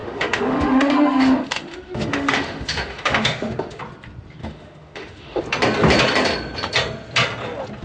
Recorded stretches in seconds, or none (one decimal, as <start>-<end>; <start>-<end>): 3.8-4.4; 5.4-7.8